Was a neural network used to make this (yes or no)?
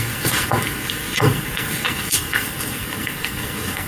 yes